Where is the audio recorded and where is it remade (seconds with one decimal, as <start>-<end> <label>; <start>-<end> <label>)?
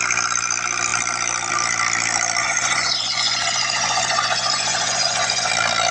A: 0.0-2.4 recorded; 2.4-5.5 remade; 5.5-5.9 recorded